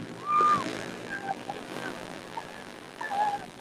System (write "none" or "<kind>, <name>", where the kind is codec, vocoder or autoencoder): vocoder, BigVGAN v2